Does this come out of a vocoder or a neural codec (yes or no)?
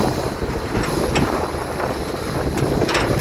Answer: no